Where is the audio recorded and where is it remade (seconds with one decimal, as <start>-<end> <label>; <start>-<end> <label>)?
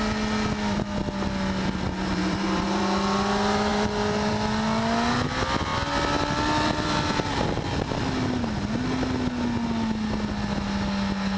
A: 0.0-2.1 recorded; 2.1-2.8 remade; 2.8-3.7 recorded; 3.7-4.3 remade; 4.3-11.4 recorded